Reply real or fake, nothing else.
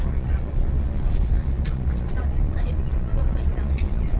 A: fake